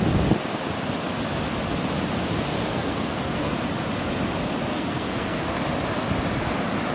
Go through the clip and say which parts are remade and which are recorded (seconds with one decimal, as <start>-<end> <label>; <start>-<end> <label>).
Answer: 0.0-2.7 recorded; 2.7-3.5 remade; 3.5-4.7 recorded; 4.7-5.4 remade; 5.4-6.9 recorded